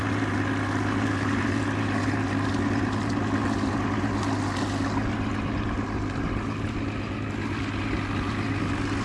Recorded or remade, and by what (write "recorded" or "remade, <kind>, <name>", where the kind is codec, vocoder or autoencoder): recorded